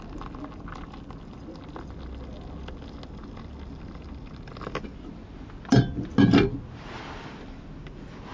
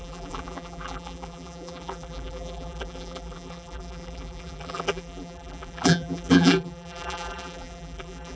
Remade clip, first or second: second